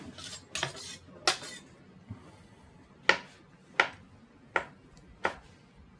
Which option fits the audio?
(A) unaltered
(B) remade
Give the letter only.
A